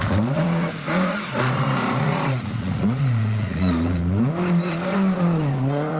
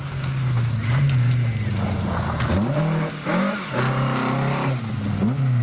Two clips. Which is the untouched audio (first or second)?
second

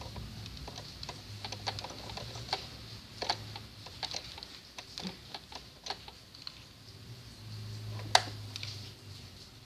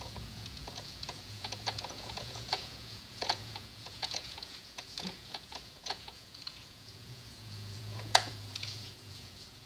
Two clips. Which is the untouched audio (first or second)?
first